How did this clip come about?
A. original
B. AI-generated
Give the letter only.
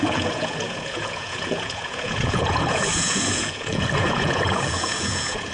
B